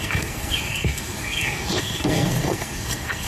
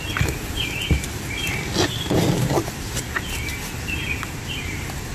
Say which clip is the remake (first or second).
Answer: first